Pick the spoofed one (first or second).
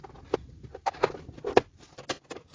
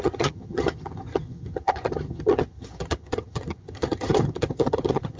second